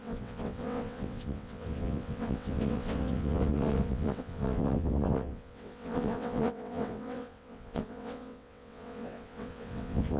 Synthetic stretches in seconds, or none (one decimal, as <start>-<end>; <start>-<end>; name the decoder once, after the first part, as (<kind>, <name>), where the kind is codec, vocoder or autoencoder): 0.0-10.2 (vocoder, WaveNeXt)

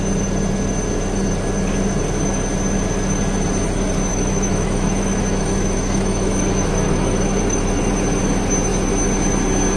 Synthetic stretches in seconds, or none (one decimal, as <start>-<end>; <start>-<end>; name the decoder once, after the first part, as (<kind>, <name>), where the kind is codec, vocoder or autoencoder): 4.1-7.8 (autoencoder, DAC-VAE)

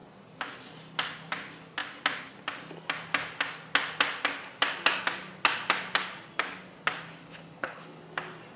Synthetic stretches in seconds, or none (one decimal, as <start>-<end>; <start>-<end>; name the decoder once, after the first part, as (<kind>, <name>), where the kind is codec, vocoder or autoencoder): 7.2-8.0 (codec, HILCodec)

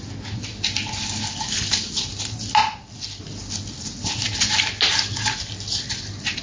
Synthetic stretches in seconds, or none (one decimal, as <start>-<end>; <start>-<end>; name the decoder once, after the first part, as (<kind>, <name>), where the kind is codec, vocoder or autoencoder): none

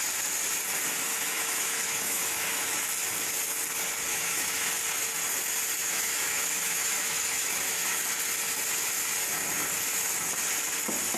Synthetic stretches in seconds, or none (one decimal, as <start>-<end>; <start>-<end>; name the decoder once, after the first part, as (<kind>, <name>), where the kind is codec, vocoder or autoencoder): 1.1-2.8 (autoencoder, DAC-VAE); 4.1-4.7; 5.8-8.0

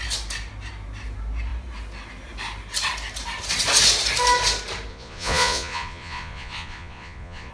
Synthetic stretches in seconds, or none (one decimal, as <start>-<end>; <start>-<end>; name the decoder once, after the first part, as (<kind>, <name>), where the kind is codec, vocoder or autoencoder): 4.9-7.5 (vocoder, Vocos)

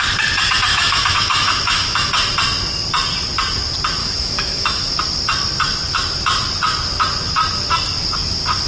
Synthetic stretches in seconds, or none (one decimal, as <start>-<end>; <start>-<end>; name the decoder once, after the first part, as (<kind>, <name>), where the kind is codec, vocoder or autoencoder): 0.7-2.1 (autoencoder, DAC-VAE); 4.0-4.9